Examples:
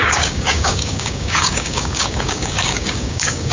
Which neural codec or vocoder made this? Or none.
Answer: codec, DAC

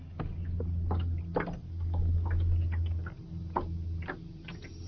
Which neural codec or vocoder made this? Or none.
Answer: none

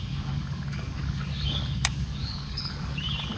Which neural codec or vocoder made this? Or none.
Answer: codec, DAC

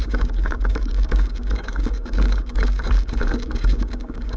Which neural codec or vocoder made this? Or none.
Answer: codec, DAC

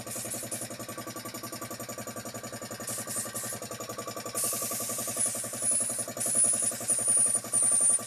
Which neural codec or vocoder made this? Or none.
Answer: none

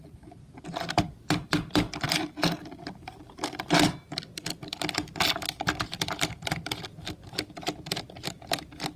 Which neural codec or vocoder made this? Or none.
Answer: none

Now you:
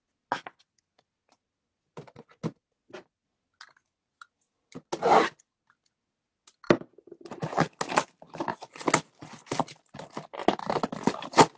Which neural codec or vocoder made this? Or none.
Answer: none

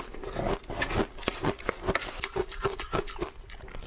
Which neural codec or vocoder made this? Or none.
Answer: none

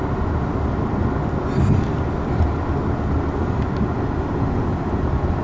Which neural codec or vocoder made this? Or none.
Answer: none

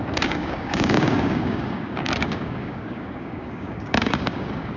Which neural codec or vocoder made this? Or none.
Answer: codec, DAC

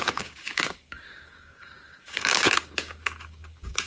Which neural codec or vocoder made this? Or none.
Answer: codec, DAC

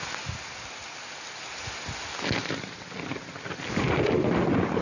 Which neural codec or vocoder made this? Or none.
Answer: none